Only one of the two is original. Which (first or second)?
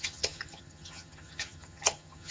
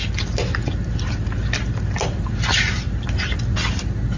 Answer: second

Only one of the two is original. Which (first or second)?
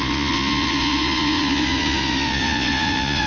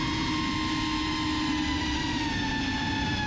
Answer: second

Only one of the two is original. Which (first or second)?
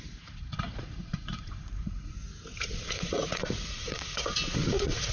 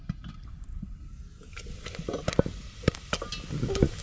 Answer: second